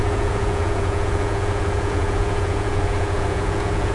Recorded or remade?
remade